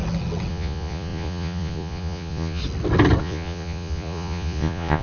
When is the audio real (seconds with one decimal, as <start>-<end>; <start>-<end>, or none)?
0.0-0.5; 2.6-3.2